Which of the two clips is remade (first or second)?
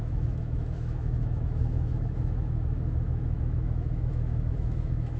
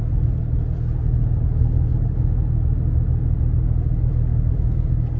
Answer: first